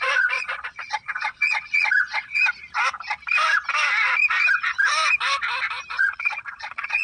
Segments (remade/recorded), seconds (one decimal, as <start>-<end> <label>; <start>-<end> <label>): 0.0-2.4 remade; 2.4-5.9 recorded; 5.9-7.0 remade